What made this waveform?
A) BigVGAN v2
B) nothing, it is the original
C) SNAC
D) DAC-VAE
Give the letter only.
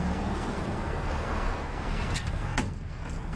C